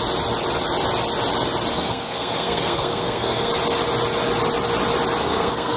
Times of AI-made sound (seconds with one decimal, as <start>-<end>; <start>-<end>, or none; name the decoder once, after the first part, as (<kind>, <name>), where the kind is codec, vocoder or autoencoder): 1.7-3.5 (codec, SNAC); 5.2-5.8